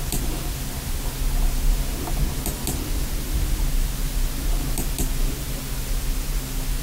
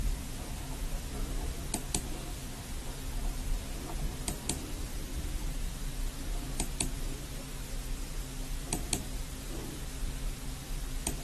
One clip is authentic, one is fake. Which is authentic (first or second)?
first